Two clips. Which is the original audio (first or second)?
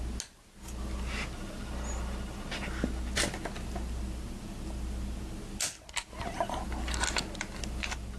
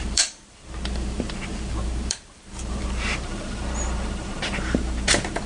first